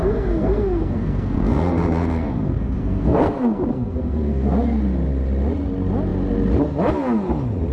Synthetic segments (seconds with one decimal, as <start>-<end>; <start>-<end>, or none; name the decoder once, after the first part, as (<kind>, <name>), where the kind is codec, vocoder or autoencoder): 0.0-4.5 (codec, SNAC)